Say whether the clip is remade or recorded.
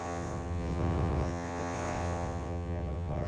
remade